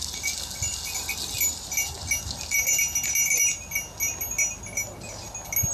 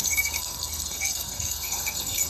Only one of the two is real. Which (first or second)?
first